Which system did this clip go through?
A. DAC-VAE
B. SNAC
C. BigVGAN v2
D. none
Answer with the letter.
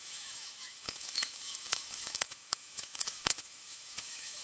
A